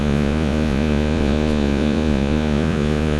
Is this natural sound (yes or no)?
no